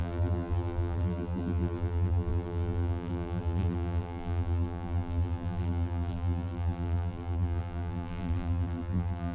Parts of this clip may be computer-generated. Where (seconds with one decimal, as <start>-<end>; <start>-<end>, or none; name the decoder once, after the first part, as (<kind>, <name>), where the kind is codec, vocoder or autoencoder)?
0.0-9.3 (vocoder, BigVGAN v2)